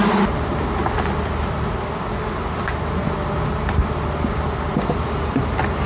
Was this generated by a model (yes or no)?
no